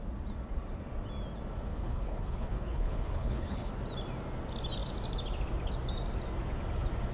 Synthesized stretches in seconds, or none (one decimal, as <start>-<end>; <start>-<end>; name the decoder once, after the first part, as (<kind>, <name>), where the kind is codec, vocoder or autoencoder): 1.7-3.7 (codec, HILCodec)